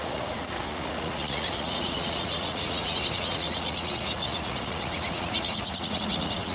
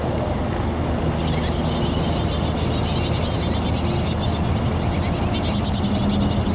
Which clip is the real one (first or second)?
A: second